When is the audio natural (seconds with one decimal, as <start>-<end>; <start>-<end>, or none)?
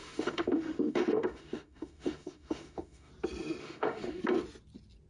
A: 3.1-3.6; 4.2-5.1